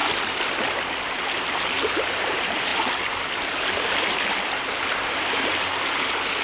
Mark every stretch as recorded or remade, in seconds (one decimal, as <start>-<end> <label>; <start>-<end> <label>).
0.0-6.4 recorded